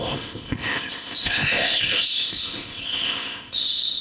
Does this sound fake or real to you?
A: fake